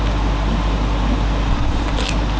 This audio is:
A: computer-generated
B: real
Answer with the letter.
B